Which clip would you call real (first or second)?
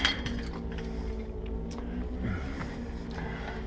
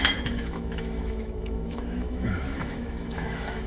first